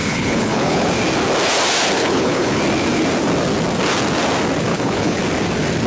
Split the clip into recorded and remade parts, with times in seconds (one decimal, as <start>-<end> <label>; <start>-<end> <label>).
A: 0.0-0.9 remade; 0.9-2.0 recorded; 2.0-2.6 remade; 2.6-4.7 recorded; 4.7-5.2 remade; 5.2-5.9 recorded